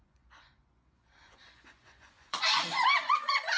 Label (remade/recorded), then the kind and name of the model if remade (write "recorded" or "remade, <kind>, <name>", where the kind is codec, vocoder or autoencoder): remade, vocoder, Vocos